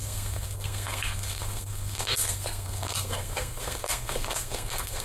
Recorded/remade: remade